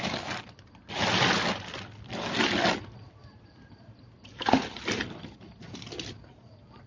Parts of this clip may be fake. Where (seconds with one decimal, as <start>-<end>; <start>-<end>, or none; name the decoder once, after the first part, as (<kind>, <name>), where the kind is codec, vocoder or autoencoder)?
3.2-5.6 (vocoder, BigVGAN v2)